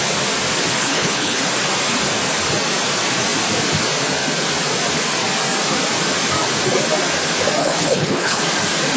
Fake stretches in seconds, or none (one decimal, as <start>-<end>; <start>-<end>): 0.8-1.4; 7.6-8.4